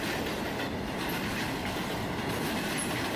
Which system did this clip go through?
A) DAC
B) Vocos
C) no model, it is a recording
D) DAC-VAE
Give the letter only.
C